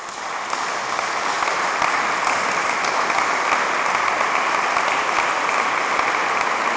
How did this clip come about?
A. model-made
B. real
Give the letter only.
B